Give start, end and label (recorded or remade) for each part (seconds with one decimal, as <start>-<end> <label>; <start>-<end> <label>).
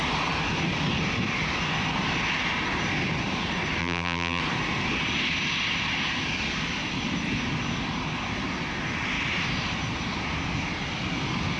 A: 0.0-3.8 recorded; 3.8-4.4 remade; 4.4-11.6 recorded